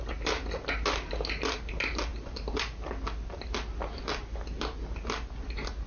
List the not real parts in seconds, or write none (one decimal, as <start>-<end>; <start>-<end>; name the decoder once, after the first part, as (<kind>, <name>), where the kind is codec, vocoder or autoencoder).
none